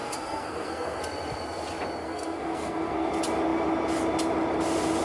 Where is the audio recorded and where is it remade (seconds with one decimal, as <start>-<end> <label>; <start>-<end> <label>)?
0.0-1.0 remade; 1.0-2.0 recorded; 2.0-3.1 remade; 3.1-5.0 recorded

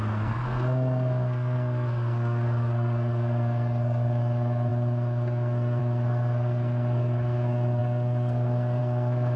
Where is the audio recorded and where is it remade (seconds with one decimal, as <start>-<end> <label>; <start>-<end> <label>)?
0.0-9.4 remade

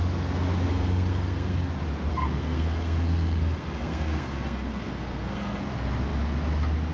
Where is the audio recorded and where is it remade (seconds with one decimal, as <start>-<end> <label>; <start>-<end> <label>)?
0.0-0.7 recorded; 0.7-1.7 remade; 1.7-2.1 recorded; 2.1-5.6 remade; 5.6-6.9 recorded

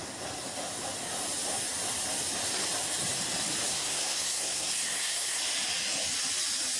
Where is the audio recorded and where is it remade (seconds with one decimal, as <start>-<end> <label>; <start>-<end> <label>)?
0.0-3.7 recorded; 3.7-5.4 remade; 5.4-6.8 recorded

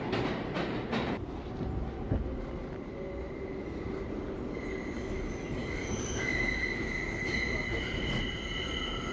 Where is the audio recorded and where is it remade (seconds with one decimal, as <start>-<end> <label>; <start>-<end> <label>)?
0.0-9.1 recorded

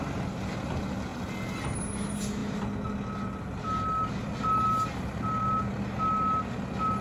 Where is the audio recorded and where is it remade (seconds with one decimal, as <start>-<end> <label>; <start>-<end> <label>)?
0.0-7.0 recorded

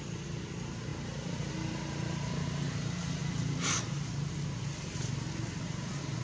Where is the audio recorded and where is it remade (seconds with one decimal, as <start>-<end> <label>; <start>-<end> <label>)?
0.0-6.2 recorded

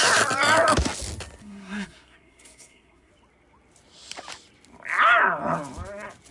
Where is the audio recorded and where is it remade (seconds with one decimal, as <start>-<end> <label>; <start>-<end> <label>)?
0.0-1.4 recorded; 1.4-3.1 remade; 3.1-6.3 recorded